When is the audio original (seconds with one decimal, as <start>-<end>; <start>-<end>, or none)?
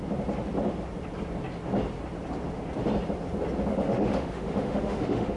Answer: 0.0-3.7